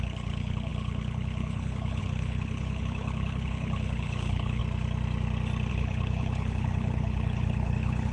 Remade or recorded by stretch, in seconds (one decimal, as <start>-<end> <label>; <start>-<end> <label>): 0.0-4.6 remade; 4.6-5.7 recorded; 5.7-8.1 remade